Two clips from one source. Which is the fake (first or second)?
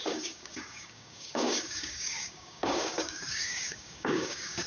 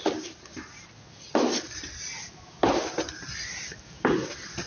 first